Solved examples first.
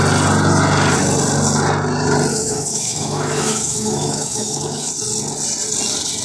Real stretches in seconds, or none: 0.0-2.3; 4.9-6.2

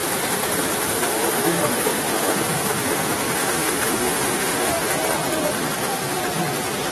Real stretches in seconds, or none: 0.0-0.8; 4.9-5.8; 6.2-6.9